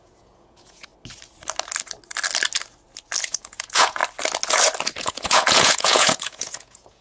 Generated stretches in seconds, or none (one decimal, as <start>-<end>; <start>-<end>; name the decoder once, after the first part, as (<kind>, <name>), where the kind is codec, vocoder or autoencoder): 0.0-0.9 (vocoder, Vocos); 3.2-4.0; 5.0-7.0